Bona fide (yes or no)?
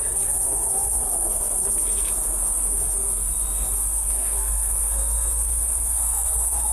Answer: no